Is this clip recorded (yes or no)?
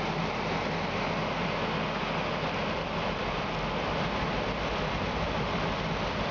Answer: yes